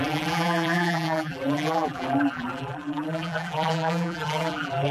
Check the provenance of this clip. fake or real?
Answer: fake